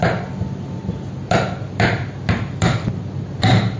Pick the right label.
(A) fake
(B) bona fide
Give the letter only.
B